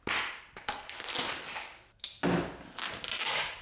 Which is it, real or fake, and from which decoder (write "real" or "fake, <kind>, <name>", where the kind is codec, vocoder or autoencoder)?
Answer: real